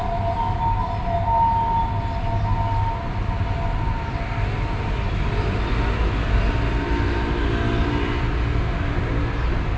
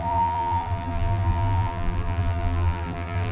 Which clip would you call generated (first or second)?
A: second